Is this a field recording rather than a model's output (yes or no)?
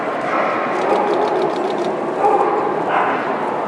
yes